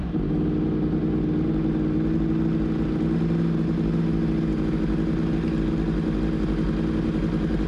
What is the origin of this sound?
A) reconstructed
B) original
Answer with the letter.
B